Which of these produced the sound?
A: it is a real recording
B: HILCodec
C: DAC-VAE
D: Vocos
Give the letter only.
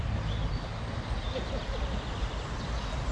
A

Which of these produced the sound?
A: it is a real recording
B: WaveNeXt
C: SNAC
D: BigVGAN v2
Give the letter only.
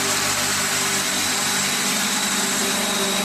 A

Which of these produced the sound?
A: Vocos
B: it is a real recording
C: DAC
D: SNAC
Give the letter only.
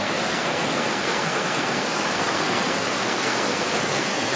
D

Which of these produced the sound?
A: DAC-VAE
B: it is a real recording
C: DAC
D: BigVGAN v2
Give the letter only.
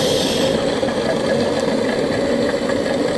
B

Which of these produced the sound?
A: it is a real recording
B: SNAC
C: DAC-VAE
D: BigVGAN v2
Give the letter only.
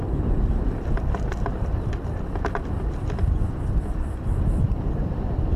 D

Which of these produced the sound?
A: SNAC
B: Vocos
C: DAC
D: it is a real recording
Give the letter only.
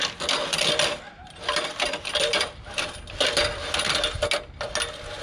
D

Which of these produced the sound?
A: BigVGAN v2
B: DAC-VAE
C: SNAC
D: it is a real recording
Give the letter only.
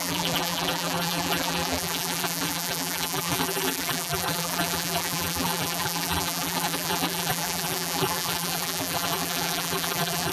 A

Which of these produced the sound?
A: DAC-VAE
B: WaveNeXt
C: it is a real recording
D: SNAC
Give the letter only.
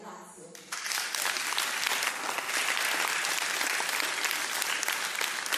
C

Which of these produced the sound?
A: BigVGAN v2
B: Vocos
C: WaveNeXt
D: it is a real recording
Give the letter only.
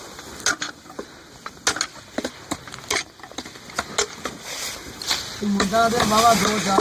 D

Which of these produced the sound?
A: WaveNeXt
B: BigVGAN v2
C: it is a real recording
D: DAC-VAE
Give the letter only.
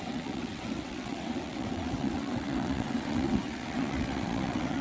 A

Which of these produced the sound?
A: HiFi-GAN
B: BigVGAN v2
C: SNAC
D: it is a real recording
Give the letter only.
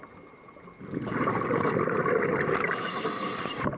D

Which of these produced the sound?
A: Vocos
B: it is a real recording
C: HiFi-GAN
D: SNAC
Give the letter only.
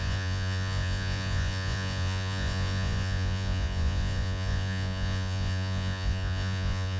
A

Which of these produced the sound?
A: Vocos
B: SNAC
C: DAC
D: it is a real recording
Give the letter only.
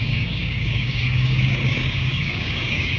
C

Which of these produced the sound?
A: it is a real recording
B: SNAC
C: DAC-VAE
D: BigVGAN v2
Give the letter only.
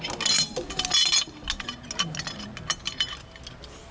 A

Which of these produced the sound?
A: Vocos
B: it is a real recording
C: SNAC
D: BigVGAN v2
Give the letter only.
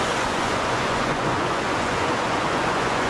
A